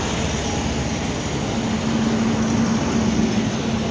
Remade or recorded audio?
recorded